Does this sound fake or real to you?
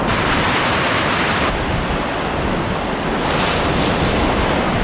real